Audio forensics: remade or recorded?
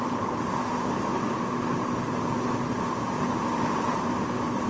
recorded